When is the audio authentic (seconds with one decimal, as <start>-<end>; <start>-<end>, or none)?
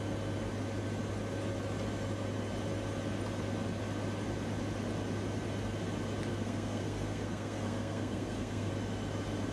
0.0-6.3; 8.7-9.5